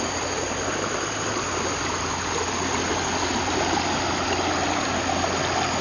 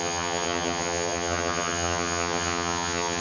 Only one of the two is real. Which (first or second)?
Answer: first